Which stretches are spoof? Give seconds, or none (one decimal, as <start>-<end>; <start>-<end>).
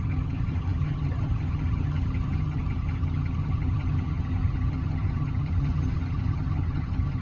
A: 0.0-7.2